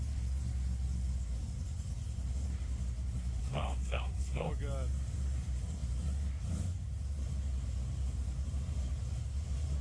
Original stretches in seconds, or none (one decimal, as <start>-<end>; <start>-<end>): 0.0-3.4; 4.5-9.8